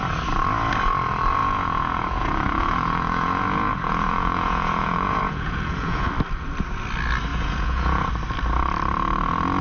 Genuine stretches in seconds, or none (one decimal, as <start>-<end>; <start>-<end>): 0.0-1.4; 6.1-7.3; 8.1-9.6